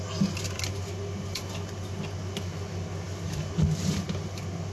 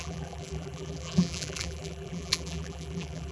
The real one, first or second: first